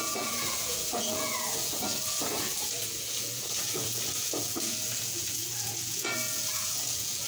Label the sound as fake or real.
fake